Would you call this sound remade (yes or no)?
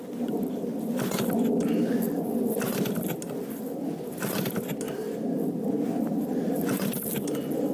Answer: no